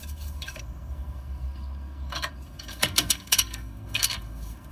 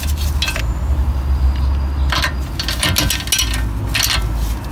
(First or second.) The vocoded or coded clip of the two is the first